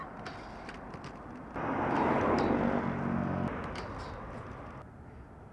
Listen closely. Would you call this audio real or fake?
real